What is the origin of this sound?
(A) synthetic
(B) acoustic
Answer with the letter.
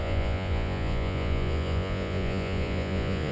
A